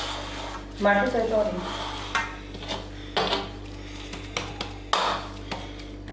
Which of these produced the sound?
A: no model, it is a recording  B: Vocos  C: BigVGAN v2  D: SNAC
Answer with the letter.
A